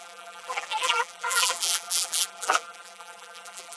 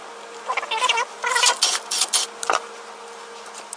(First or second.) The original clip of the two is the second